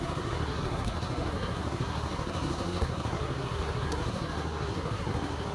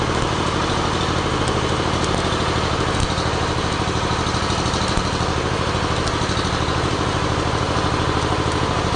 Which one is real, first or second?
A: second